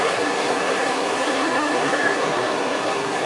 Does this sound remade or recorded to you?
remade